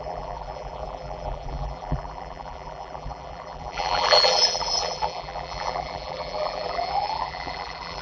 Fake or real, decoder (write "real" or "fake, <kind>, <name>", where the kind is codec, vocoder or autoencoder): fake, vocoder, BigVGAN v2